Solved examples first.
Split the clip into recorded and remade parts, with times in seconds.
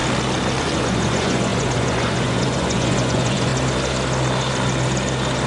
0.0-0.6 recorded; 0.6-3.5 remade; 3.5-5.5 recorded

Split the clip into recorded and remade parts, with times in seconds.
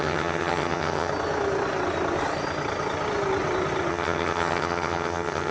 0.0-1.1 remade; 1.1-3.9 recorded; 3.9-5.5 remade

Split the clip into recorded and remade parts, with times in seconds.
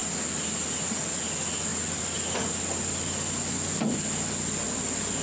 0.0-5.2 recorded